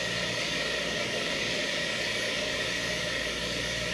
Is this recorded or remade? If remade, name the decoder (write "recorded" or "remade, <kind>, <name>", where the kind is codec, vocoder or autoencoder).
remade, codec, DAC